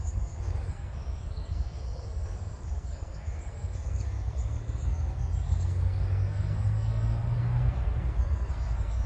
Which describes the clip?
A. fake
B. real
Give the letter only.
A